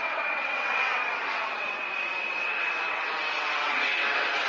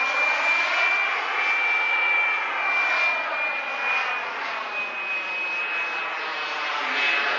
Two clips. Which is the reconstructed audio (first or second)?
first